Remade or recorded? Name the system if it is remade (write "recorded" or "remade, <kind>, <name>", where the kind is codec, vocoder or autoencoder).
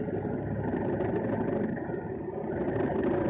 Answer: recorded